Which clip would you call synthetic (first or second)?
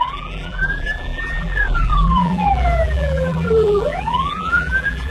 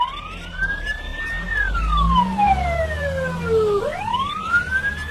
first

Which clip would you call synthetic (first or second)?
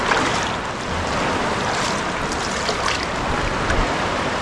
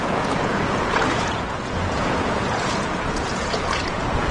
second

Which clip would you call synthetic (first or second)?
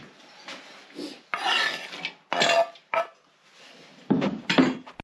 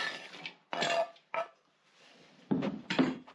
second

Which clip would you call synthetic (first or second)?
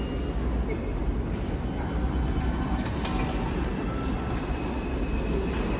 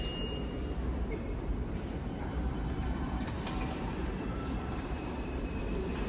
second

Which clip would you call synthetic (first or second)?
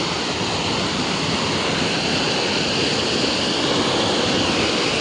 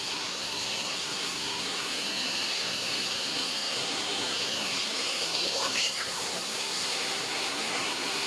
second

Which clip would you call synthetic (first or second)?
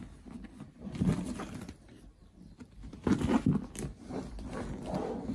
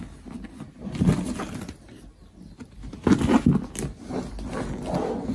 first